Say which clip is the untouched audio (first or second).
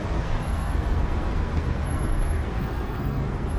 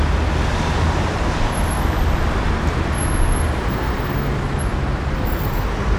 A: second